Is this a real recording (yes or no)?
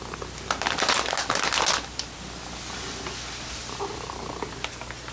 yes